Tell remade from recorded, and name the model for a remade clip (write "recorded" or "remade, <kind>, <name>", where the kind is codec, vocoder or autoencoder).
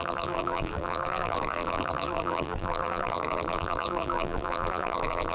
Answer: remade, vocoder, BigVGAN v2